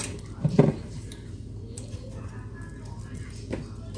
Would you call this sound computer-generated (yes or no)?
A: no